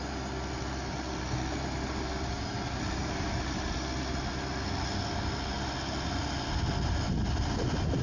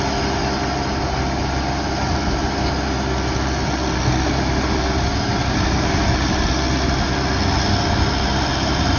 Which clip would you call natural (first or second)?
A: first